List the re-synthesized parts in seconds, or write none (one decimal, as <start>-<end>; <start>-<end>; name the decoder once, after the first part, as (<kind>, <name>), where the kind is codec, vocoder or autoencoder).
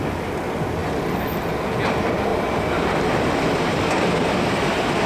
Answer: none